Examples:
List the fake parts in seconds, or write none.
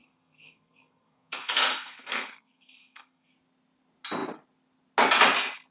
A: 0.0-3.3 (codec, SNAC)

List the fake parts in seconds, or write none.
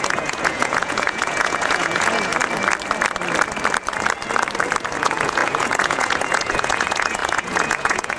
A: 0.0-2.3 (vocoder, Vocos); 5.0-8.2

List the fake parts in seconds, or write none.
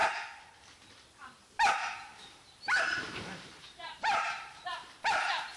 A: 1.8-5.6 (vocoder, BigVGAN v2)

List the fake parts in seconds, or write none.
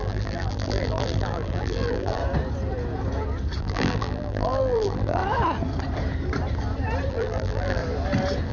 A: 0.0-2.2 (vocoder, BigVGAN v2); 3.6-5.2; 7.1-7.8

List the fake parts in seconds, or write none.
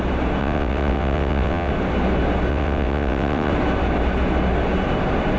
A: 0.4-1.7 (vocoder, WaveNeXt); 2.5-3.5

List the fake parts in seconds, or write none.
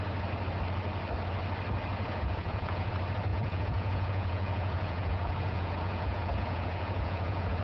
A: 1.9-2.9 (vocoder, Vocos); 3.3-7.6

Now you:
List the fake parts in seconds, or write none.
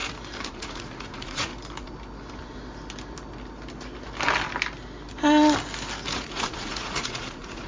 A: 0.5-1.5 (vocoder, Vocos); 6.1-7.7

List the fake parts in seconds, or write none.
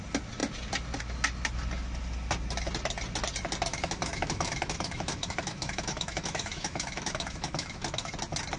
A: 3.7-8.1 (autoencoder, DAC-VAE)